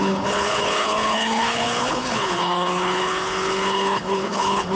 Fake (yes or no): yes